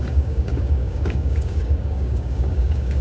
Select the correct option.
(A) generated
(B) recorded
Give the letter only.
A